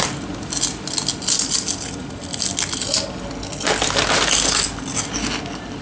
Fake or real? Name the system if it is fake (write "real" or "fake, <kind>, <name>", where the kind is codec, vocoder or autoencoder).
real